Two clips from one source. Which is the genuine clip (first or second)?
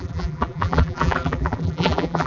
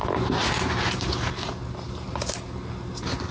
second